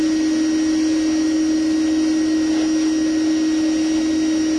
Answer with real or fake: real